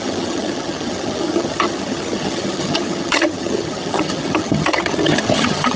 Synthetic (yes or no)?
yes